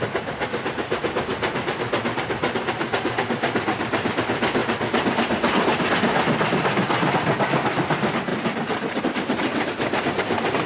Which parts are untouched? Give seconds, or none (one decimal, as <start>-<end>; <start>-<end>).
1.3-2.0; 4.6-5.8